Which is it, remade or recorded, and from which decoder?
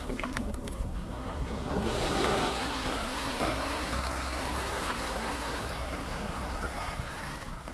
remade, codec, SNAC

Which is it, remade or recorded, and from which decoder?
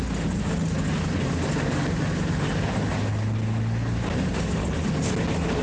recorded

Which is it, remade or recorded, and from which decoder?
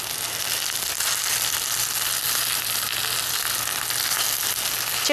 recorded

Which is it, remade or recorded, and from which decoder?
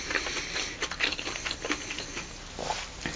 recorded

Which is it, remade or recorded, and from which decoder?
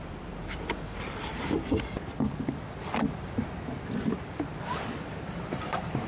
recorded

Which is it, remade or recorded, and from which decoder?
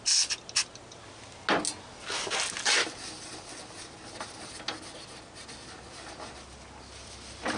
recorded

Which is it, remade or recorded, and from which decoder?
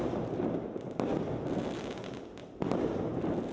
recorded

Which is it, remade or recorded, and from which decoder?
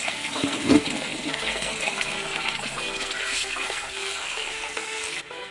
remade, codec, SNAC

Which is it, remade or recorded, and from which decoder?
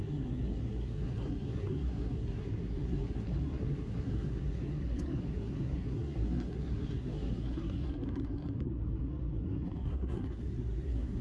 remade, codec, SNAC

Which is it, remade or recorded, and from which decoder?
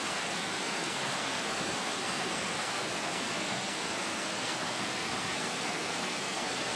remade, codec, SNAC